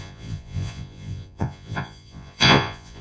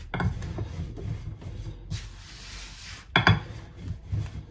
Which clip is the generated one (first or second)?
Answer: first